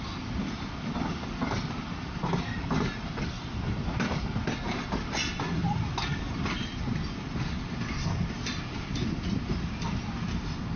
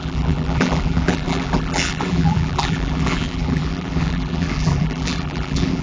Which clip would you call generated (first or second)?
second